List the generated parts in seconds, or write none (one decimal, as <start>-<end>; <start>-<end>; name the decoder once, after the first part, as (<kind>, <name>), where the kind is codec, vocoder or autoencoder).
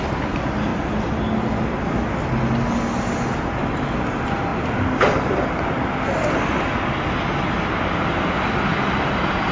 none